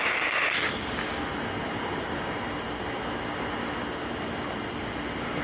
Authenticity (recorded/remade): recorded